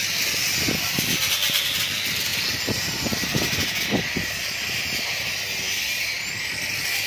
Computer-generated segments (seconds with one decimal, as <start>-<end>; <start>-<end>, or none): none